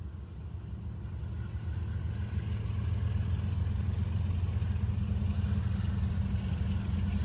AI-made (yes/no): no